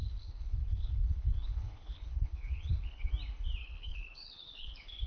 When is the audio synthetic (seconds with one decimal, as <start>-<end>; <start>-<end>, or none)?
0.0-3.1; 3.6-5.1